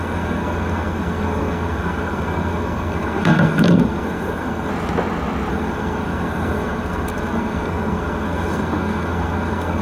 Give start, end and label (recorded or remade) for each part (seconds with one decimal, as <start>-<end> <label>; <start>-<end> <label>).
0.0-4.7 remade; 4.7-5.5 recorded; 5.5-9.8 remade